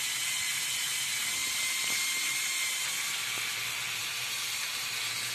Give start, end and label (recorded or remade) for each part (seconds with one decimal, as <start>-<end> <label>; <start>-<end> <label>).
0.0-1.4 recorded; 1.4-2.9 remade; 2.9-4.0 recorded; 4.0-4.6 remade; 4.6-5.3 recorded